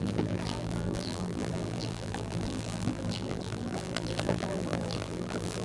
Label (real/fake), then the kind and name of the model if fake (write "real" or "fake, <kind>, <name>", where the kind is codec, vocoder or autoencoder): fake, vocoder, BigVGAN v2